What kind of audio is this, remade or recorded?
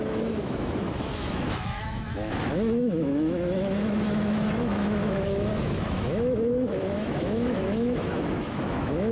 remade